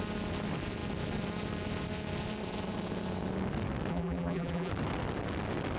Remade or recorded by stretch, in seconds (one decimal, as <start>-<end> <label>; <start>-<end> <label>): 0.0-3.9 recorded; 3.9-4.7 remade; 4.7-5.8 recorded